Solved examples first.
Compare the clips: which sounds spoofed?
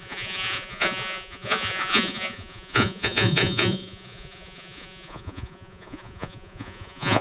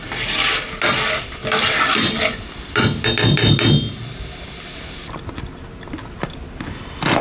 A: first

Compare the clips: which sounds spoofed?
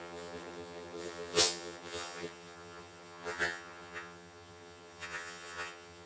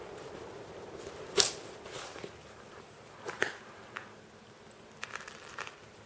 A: first